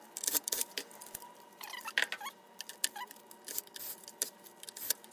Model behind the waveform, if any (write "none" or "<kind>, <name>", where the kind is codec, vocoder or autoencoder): none